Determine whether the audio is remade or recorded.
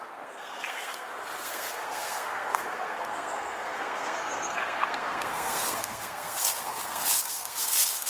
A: remade